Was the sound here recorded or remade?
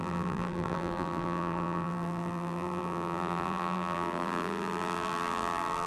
remade